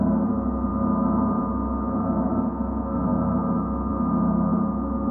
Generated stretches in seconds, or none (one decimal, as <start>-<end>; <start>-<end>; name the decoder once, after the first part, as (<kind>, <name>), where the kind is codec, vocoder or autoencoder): none